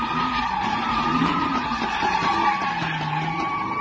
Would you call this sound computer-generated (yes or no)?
no